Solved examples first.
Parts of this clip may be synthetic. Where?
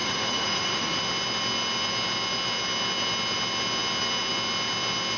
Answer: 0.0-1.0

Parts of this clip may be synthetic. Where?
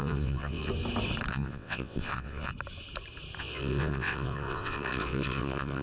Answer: 0.0-0.7; 1.3-2.5; 3.4-5.8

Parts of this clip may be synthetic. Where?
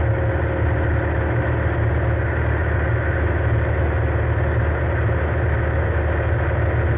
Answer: none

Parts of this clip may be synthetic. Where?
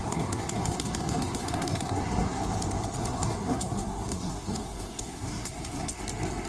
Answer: 0.0-2.4; 3.0-6.0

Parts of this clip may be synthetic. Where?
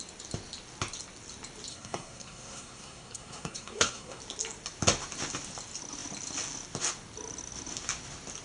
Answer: 1.7-4.2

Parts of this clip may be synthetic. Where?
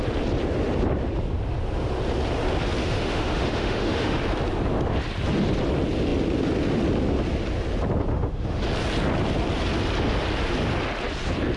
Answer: 2.8-4.2; 8.1-8.6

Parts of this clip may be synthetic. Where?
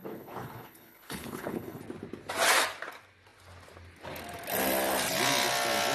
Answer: 0.0-1.8